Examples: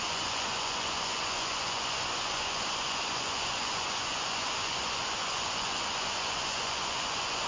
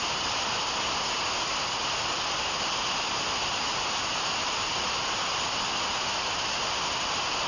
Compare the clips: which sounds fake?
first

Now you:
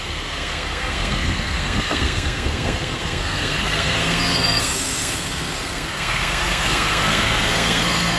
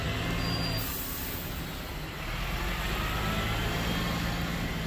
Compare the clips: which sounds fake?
first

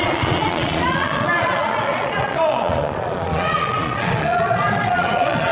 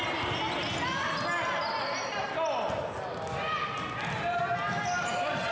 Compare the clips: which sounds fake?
first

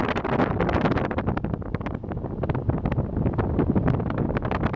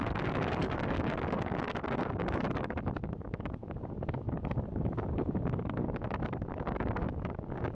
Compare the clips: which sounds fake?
second